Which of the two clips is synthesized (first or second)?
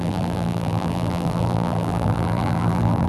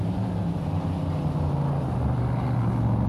first